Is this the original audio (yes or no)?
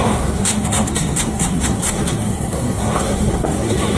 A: no